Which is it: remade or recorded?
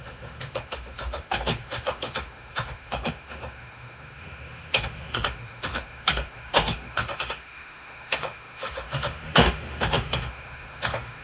remade